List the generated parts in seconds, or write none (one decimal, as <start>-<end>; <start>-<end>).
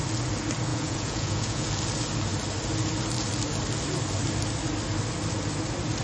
0.7-1.7